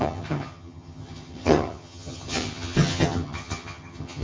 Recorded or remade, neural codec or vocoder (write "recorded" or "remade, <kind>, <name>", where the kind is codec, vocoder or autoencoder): remade, vocoder, HiFi-GAN